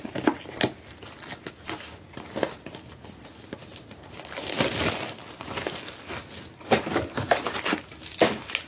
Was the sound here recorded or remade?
recorded